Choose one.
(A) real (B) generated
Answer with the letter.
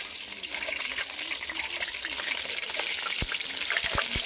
A